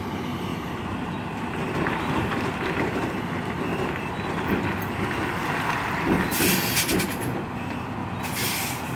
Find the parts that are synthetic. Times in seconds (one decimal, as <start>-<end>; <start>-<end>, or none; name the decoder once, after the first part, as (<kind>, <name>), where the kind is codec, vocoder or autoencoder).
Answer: 0.0-3.7 (vocoder, BigVGAN v2); 7.5-9.0

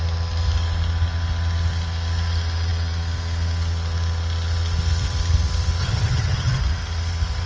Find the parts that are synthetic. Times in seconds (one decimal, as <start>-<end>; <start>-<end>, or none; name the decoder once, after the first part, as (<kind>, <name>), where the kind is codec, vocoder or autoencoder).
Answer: 5.8-6.6 (vocoder, HiFi-GAN)

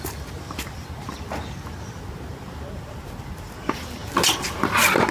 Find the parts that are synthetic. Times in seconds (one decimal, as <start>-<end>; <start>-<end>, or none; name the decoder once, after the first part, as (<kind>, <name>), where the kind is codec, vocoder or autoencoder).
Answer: none